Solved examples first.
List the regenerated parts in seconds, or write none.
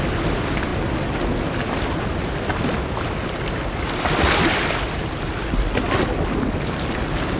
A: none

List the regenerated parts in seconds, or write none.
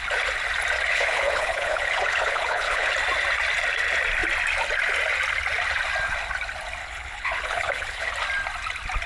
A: 0.9-2.9 (codec, HILCodec); 6.8-8.1